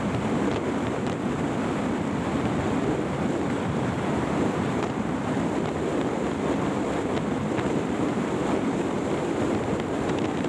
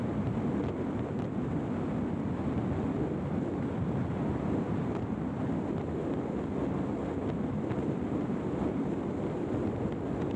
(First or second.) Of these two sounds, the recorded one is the second